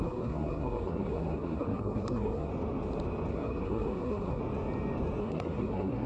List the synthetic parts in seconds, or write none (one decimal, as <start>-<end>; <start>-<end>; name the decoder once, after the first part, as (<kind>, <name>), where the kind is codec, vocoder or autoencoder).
0.0-2.5 (codec, SNAC); 3.3-4.4; 5.2-6.1